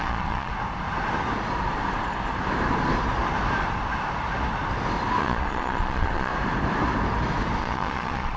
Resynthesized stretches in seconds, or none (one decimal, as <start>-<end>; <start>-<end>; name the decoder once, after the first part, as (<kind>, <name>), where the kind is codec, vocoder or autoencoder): 0.0-0.5 (vocoder, Vocos); 5.2-6.3; 7.6-8.4